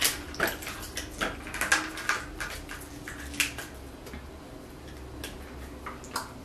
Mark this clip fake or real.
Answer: real